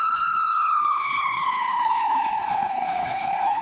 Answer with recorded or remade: remade